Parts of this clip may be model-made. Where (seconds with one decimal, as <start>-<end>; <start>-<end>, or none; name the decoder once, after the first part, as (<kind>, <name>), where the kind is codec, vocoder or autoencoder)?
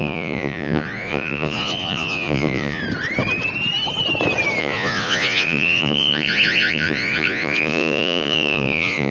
0.0-2.8 (vocoder, Vocos); 4.6-9.1